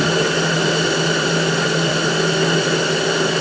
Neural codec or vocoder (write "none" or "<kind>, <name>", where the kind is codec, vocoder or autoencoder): none